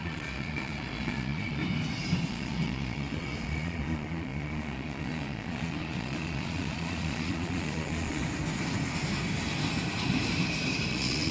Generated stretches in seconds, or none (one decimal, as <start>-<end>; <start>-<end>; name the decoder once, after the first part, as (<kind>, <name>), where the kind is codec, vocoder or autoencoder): 0.0-1.6 (vocoder, Vocos); 2.3-8.2; 10.9-11.3